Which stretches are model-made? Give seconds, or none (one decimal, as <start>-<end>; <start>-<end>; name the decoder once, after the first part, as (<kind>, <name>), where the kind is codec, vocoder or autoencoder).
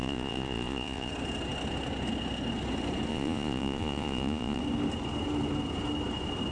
0.0-1.1 (vocoder, Vocos); 3.1-4.6